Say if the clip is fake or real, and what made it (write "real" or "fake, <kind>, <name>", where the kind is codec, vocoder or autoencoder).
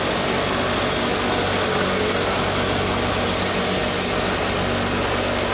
real